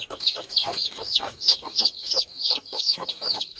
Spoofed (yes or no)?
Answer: yes